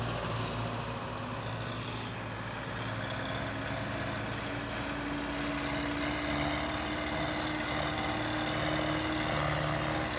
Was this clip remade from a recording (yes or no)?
no